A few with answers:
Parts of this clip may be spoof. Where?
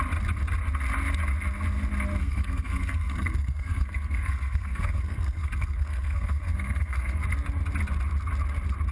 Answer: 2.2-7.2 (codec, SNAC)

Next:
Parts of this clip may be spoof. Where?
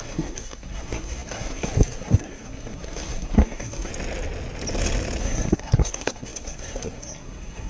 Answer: 0.0-3.9 (codec, SNAC); 5.2-7.7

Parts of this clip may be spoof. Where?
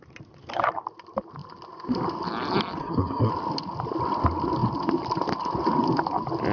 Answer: 2.8-3.3 (codec, SNAC)